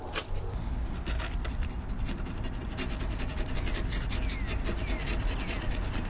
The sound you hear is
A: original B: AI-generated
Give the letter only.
A